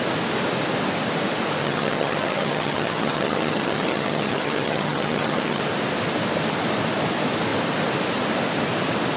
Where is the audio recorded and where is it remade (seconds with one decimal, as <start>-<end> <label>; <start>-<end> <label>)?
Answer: 0.0-1.6 recorded; 1.6-5.6 remade; 5.6-9.2 recorded